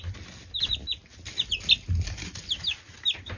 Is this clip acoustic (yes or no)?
yes